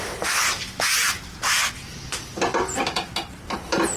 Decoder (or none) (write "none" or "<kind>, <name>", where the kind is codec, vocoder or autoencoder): none